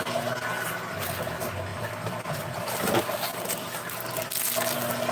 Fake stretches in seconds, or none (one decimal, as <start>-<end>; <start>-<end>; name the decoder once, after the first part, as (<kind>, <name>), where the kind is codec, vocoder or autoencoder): 1.7-3.0 (vocoder, BigVGAN v2)